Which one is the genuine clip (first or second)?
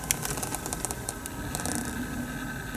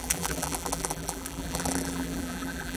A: first